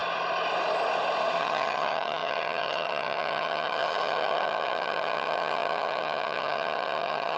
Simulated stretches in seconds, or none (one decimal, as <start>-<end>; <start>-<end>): 1.4-7.4